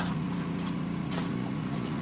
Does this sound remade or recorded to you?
remade